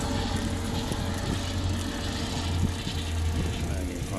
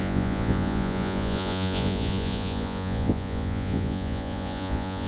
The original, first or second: first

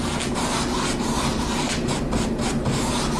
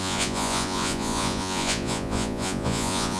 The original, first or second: first